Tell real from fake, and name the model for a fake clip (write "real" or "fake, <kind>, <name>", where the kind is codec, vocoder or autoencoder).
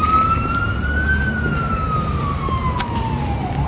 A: real